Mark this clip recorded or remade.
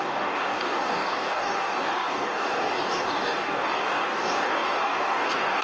remade